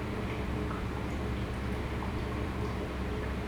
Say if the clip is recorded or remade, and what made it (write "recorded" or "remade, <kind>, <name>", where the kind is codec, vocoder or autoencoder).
remade, vocoder, BigVGAN v2